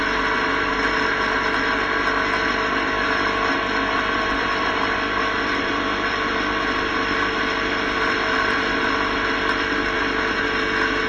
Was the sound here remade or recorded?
recorded